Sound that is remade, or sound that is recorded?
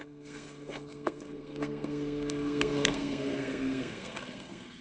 remade